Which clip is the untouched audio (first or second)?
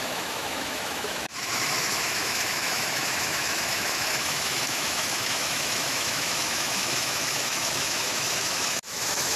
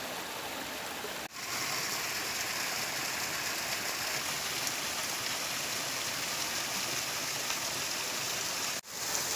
second